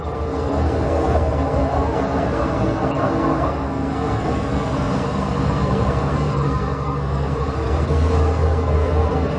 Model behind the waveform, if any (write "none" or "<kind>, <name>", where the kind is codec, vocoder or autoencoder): codec, SNAC